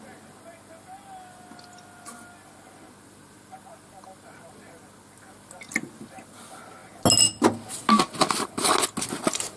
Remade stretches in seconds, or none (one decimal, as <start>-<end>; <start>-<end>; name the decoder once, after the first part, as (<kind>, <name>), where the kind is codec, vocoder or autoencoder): none